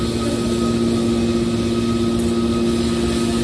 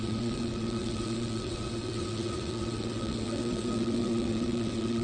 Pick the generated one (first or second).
second